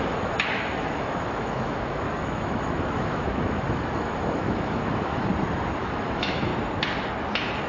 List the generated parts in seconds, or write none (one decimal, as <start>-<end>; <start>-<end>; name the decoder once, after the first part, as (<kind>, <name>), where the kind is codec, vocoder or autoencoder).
0.0-5.3 (autoencoder, DAC-VAE); 5.8-6.5